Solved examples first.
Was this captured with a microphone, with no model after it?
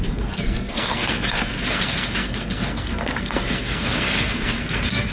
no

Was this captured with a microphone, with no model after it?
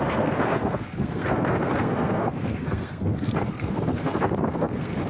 no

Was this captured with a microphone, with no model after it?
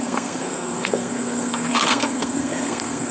no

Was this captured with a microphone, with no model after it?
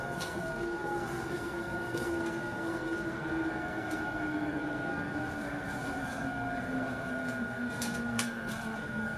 no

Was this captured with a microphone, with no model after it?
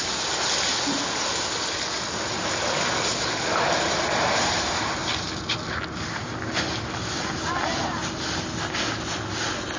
yes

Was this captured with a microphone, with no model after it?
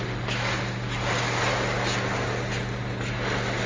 yes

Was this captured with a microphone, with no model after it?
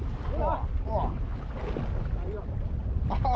yes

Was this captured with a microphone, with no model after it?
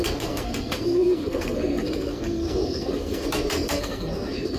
no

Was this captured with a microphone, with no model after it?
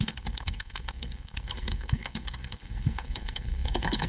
no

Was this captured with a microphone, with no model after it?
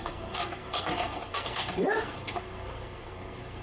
no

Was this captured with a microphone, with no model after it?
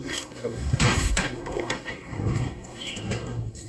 no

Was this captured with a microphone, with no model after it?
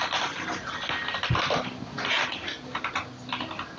yes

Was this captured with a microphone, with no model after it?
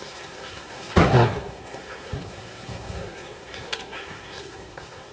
no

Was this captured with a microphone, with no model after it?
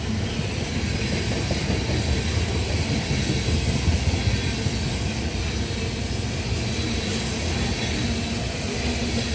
yes